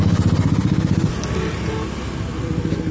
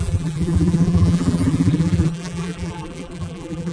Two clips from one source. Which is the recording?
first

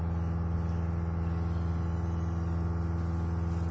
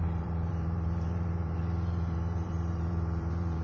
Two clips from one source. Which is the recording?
first